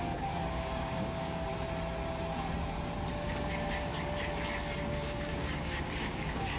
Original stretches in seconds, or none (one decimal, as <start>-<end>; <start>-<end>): 1.5-3.1; 3.9-4.8